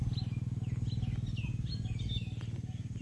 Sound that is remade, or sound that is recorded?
recorded